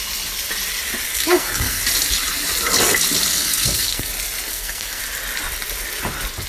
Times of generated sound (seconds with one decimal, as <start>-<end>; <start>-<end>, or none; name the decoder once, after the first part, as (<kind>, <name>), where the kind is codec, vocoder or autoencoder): 1.1-1.8 (codec, SNAC); 3.3-4.1; 4.5-5.0